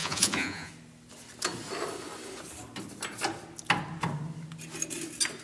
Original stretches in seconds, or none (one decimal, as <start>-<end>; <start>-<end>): 0.7-5.4